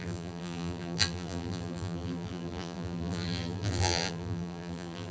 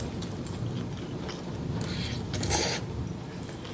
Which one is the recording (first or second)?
second